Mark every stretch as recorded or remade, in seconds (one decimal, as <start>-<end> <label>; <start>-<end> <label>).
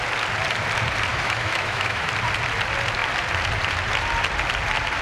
0.0-1.1 recorded; 1.1-2.1 remade; 2.1-5.0 recorded